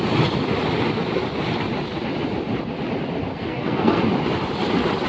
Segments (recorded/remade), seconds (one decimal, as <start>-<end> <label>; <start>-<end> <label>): 0.0-3.3 recorded; 3.3-4.0 remade; 4.0-5.1 recorded